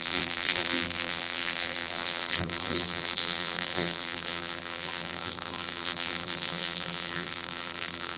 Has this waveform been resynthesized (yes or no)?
yes